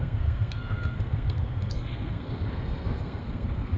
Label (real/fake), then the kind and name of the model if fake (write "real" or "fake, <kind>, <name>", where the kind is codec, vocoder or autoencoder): fake, codec, SNAC